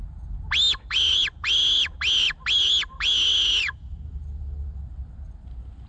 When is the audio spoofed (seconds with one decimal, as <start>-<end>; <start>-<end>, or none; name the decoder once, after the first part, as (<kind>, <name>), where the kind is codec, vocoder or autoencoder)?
none